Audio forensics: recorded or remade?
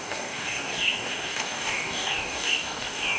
remade